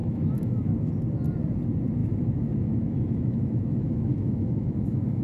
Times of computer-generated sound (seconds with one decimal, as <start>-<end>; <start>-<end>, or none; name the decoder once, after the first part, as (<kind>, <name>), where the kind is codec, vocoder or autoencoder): 0.0-0.9 (autoencoder, DAC-VAE); 2.0-5.2

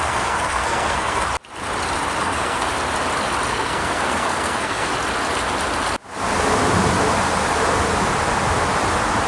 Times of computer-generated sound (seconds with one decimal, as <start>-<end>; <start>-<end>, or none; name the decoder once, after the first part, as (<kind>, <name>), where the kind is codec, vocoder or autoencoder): 0.0-1.3 (codec, SNAC); 2.2-2.7; 3.5-4.9

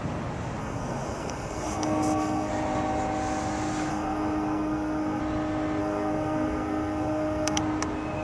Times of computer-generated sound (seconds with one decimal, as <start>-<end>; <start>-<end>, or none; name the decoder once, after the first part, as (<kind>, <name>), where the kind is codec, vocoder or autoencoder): 0.6-2.5 (codec, SNAC); 3.9-5.2; 5.8-7.6

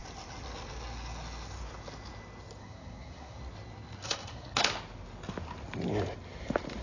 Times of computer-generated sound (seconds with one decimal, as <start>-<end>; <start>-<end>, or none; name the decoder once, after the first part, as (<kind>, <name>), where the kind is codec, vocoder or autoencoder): 2.6-3.4 (codec, SNAC); 4.0-4.7

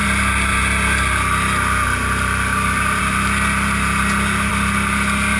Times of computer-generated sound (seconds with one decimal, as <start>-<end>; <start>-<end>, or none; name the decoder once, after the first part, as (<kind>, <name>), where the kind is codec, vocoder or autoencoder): none

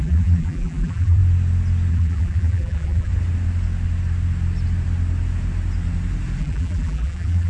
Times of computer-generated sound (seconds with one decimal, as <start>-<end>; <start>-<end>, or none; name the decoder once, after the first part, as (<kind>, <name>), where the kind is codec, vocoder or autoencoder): 0.0-1.2 (vocoder, BigVGAN v2); 1.9-3.1; 6.4-7.5

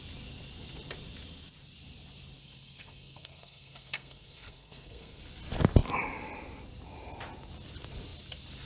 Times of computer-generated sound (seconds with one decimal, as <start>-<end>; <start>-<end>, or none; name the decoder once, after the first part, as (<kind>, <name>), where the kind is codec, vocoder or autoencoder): 2.4-5.2 (codec, SNAC)